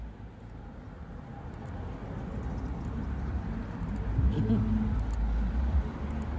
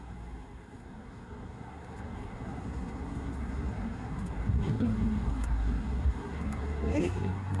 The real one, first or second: first